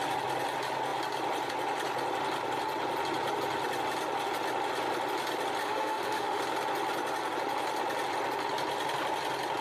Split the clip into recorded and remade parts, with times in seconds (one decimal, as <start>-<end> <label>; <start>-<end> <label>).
0.0-5.6 recorded; 5.6-6.4 remade; 6.4-9.6 recorded